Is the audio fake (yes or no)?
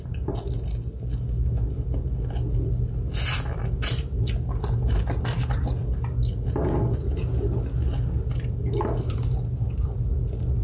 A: no